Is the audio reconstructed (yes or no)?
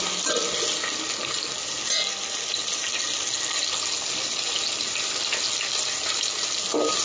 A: no